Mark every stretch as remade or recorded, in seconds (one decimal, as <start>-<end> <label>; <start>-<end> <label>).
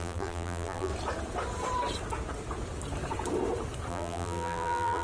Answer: 0.0-0.9 remade; 0.9-3.9 recorded; 3.9-5.0 remade